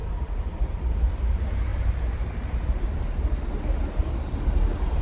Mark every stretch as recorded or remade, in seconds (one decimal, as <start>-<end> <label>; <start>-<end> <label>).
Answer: 0.0-1.1 remade; 1.1-5.0 recorded